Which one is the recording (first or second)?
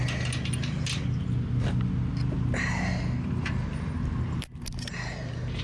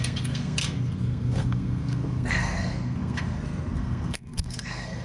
first